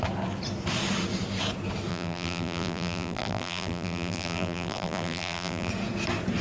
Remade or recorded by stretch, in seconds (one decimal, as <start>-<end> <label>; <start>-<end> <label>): 0.0-1.9 recorded; 1.9-5.7 remade; 5.7-6.4 recorded